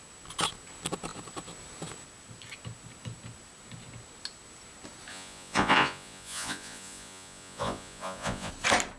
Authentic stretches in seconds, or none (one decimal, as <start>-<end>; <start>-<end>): 0.0-5.1; 8.5-9.0